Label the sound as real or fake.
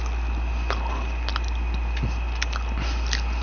real